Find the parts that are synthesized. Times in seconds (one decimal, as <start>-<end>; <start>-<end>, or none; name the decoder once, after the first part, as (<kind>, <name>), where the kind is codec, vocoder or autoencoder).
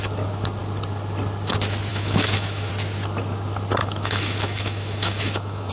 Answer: 1.9-2.7 (autoencoder, DAC-VAE); 3.8-5.7